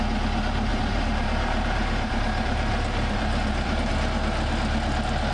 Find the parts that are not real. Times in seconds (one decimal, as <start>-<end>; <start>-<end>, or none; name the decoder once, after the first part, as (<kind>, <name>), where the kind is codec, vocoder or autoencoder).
0.7-3.9 (vocoder, BigVGAN v2)